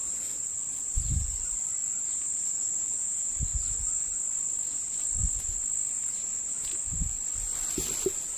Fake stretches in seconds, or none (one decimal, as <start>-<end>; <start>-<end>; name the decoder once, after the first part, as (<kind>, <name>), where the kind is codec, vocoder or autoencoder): none